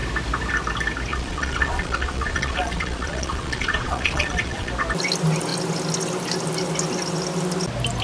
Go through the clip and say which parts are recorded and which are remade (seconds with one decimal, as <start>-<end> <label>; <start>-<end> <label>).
0.0-1.1 recorded; 1.1-4.7 remade; 4.7-8.0 recorded